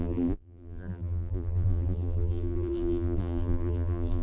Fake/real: fake